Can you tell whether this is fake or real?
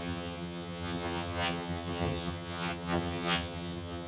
fake